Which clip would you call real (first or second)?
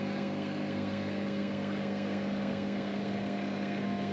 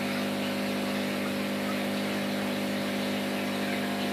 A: second